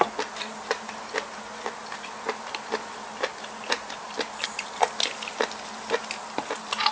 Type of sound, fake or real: real